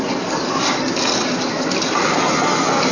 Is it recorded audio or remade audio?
remade